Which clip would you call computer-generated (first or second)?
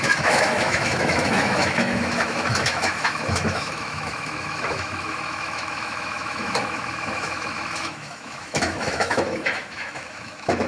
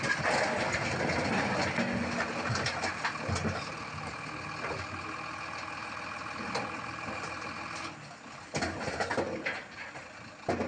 first